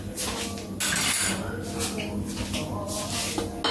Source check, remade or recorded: recorded